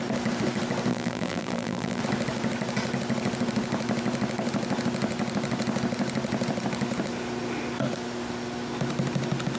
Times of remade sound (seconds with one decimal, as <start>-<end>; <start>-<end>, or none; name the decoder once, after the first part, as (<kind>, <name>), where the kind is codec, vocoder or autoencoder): 0.9-2.0 (vocoder, BigVGAN v2)